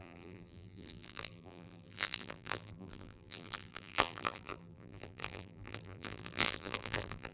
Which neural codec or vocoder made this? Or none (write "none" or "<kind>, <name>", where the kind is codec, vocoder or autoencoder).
vocoder, BigVGAN v2